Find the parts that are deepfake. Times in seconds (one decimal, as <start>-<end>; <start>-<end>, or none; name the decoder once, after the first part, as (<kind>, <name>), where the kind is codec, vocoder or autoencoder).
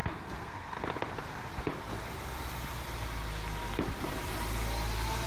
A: 0.0-0.8 (codec, SNAC)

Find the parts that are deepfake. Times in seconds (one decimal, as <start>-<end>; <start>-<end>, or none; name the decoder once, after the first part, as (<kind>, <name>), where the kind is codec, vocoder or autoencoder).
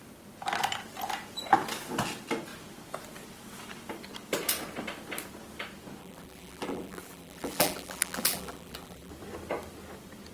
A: 6.0-9.1 (vocoder, BigVGAN v2)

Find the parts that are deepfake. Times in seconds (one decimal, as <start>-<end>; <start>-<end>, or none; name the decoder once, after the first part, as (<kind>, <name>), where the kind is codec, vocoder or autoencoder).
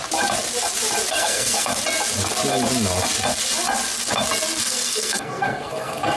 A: 1.1-1.7 (codec, SNAC); 4.6-6.2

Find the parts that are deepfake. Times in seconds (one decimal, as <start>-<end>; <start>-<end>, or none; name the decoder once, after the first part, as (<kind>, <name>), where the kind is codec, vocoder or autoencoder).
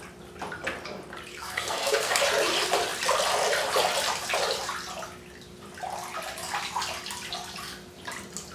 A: 1.3-2.2 (codec, SNAC)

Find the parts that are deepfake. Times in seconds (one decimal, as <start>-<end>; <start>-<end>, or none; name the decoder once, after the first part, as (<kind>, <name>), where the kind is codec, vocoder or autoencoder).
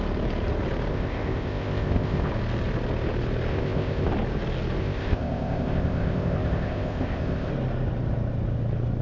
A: 0.9-2.3 (codec, ZipCodec); 3.5-4.1; 4.8-7.5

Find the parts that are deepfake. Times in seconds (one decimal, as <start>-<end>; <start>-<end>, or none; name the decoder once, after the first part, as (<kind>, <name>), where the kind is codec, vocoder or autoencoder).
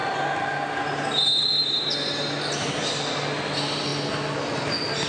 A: none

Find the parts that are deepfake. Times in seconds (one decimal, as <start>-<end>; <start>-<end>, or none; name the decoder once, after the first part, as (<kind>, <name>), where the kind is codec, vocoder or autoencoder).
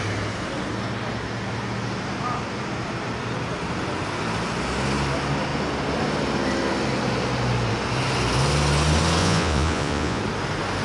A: 9.2-10.2 (vocoder, Vocos)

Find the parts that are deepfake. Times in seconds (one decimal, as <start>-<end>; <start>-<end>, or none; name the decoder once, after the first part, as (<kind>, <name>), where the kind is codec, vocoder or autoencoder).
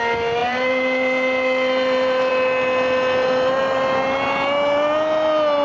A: 0.4-2.3 (vocoder, BigVGAN v2)